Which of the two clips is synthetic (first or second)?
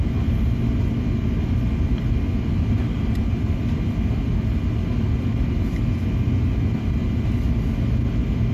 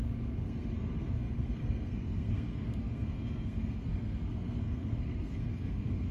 second